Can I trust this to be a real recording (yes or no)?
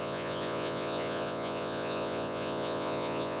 no